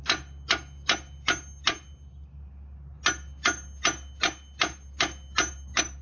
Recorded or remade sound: recorded